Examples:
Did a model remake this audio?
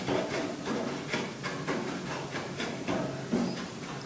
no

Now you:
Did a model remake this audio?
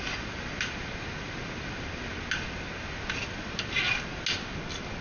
no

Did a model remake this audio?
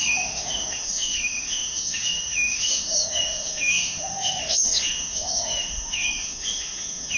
yes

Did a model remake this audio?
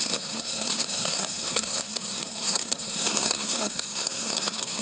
yes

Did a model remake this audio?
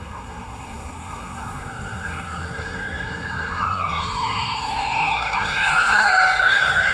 yes